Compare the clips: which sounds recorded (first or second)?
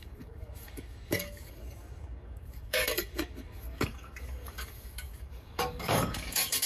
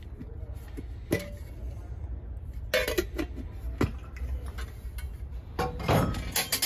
second